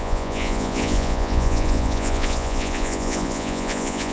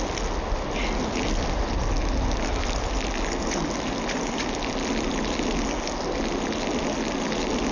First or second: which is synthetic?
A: first